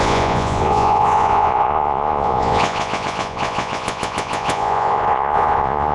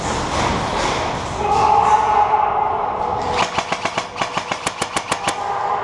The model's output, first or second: first